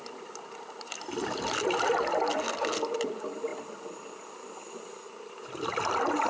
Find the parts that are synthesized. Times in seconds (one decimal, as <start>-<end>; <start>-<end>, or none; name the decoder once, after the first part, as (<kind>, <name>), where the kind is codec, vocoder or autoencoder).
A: none